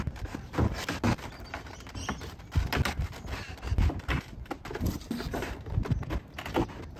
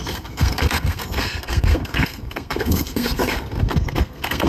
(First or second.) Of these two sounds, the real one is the first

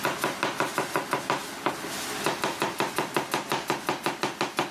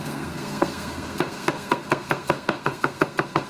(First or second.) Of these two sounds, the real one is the first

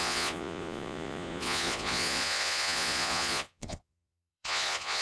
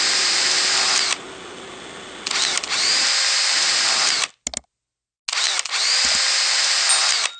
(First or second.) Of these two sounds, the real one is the second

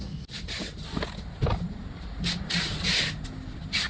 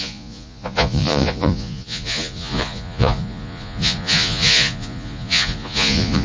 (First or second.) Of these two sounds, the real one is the first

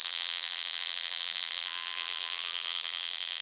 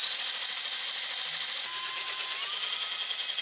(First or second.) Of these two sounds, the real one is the second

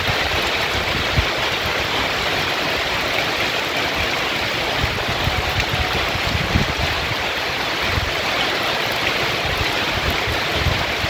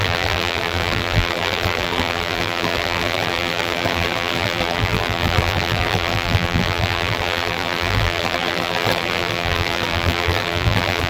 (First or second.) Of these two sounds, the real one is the first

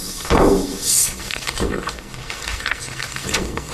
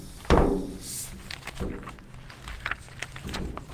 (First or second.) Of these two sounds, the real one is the second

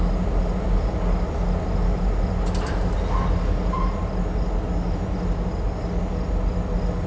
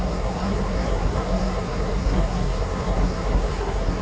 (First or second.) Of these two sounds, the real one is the first